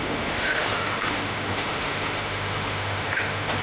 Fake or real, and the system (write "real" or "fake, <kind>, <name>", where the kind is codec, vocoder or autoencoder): fake, autoencoder, DAC-VAE